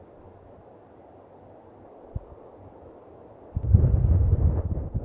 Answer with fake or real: real